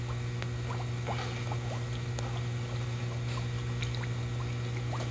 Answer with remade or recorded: recorded